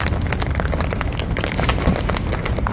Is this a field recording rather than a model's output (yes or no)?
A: yes